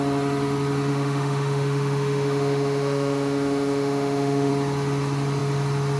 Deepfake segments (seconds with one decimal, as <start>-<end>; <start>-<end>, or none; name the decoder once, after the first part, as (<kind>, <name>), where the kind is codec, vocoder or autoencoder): 0.9-4.5 (autoencoder, DAC-VAE)